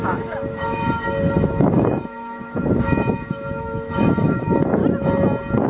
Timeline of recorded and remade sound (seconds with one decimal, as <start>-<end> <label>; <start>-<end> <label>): 0.0-4.8 remade; 4.8-5.7 recorded